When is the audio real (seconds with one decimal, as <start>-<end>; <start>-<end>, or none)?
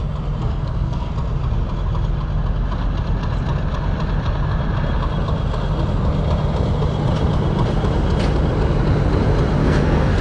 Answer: 0.0-0.4; 1.1-9.6